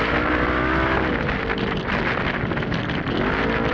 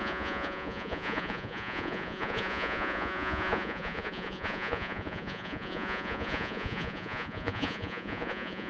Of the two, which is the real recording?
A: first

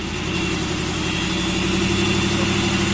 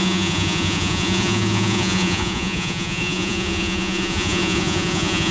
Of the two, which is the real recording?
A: first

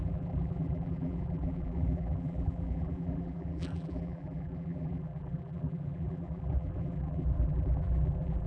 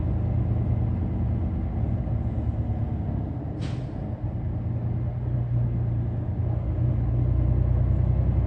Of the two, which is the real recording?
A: second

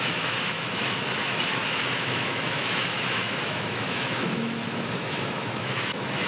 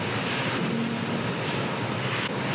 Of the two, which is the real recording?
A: second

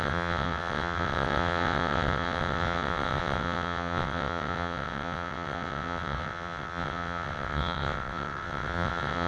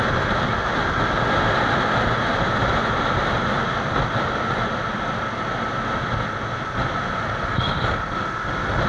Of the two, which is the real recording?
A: second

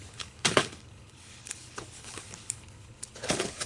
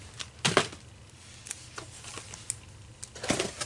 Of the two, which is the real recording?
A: second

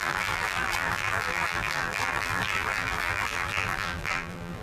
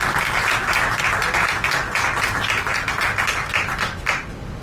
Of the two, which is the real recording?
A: second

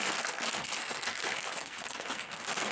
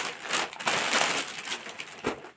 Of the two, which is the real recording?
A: second